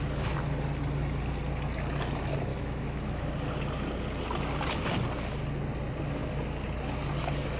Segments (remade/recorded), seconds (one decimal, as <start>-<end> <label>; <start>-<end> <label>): 0.0-2.5 recorded; 2.5-3.3 remade; 3.3-7.6 recorded